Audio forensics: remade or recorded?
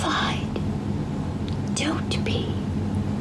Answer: recorded